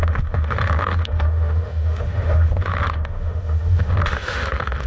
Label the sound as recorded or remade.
remade